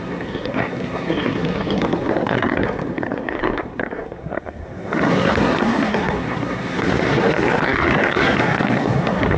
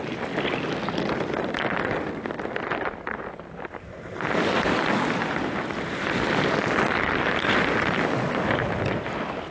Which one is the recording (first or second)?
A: second